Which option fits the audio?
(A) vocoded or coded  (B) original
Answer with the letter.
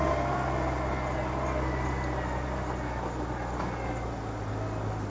B